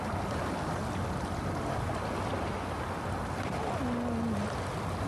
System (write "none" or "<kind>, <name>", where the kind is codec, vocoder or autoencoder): none